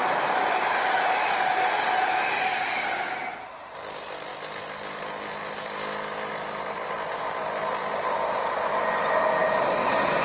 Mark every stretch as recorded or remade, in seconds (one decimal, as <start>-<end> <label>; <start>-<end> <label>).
0.0-4.3 remade; 4.3-6.3 recorded; 6.3-6.8 remade; 6.8-7.3 recorded; 7.3-10.2 remade